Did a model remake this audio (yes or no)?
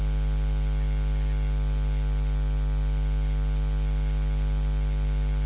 no